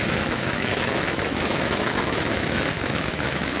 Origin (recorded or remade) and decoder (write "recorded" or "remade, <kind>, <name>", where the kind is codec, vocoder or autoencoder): remade, autoencoder, DAC-VAE